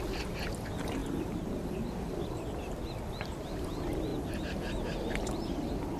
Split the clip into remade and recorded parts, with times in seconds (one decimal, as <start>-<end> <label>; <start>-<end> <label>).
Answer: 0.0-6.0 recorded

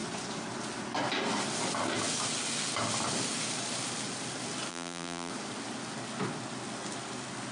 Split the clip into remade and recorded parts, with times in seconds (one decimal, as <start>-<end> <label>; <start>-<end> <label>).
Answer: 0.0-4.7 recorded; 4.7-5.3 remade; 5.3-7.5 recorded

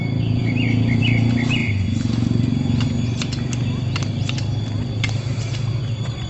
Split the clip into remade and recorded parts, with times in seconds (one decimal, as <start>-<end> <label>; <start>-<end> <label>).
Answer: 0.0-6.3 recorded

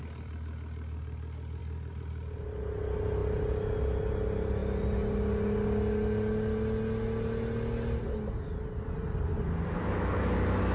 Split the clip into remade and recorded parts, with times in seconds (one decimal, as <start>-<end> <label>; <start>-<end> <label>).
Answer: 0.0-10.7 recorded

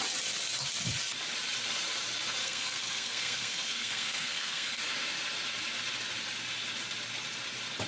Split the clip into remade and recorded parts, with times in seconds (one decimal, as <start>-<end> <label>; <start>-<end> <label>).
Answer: 0.0-2.4 recorded; 2.4-4.8 remade; 4.8-7.9 recorded

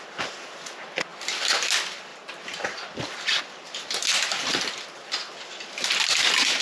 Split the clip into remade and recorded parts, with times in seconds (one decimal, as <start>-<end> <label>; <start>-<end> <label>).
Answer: 0.0-6.6 recorded